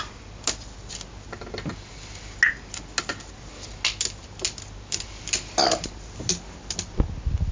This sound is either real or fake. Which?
real